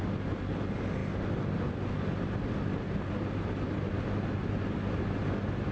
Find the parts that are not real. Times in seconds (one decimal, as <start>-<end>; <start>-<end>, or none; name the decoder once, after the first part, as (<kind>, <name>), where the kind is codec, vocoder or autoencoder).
none

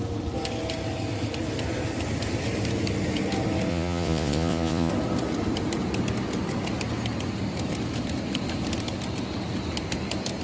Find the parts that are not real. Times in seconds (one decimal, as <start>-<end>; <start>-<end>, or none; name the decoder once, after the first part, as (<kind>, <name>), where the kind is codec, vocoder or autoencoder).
3.7-4.9 (vocoder, Vocos)

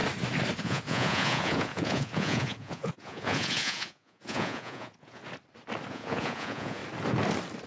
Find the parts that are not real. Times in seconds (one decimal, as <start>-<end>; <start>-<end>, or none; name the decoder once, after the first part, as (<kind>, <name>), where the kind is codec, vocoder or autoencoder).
0.6-5.2 (vocoder, Vocos); 5.9-6.8

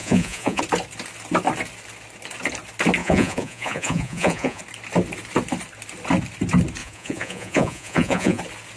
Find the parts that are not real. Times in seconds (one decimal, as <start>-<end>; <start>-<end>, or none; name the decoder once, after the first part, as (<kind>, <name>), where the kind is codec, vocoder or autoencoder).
0.0-0.6 (vocoder, Vocos); 3.0-4.6; 6.8-8.4